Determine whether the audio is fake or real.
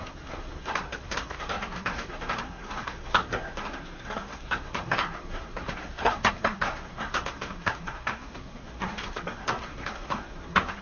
fake